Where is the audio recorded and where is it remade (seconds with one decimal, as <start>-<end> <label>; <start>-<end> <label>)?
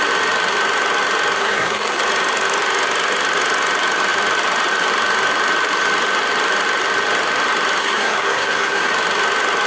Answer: 0.0-1.4 recorded; 1.4-2.0 remade; 2.0-7.8 recorded; 7.8-8.9 remade; 8.9-9.7 recorded